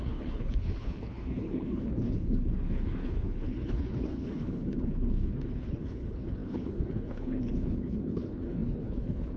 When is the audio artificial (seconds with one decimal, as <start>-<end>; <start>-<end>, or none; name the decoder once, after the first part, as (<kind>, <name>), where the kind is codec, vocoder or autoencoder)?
0.0-9.4 (codec, HILCodec)